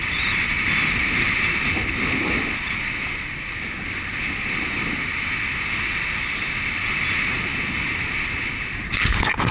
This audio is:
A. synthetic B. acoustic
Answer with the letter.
B